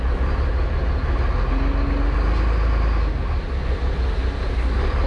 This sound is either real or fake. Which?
real